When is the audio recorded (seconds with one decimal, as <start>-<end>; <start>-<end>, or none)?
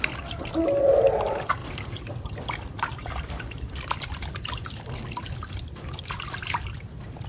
0.0-7.3